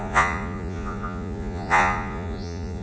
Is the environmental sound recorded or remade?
remade